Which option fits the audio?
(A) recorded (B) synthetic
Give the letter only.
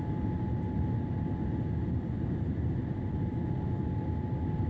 A